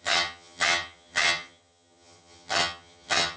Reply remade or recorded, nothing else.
remade